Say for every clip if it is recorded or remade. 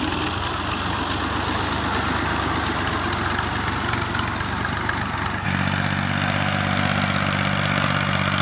recorded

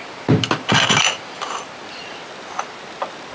recorded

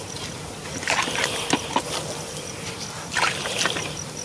recorded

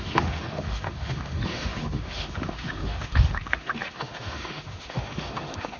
remade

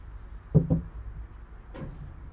recorded